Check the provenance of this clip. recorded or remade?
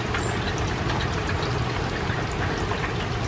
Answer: recorded